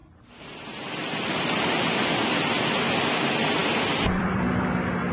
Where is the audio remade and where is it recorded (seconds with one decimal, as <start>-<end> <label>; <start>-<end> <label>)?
0.0-3.1 remade; 3.1-3.6 recorded; 3.6-5.1 remade